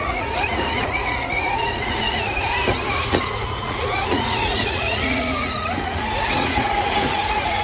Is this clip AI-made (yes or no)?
yes